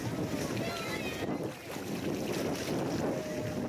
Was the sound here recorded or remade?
recorded